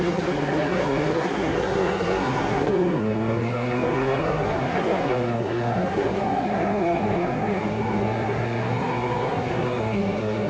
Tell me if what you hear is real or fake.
fake